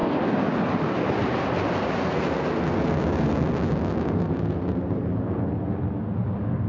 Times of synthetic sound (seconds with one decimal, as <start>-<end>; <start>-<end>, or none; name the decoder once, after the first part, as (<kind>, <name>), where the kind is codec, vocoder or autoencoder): none